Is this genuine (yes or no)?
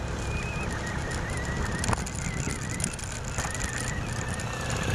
yes